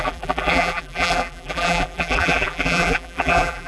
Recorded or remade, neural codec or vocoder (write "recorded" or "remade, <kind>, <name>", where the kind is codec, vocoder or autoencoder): remade, vocoder, BigVGAN v2